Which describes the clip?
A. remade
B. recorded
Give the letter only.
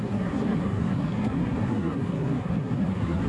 A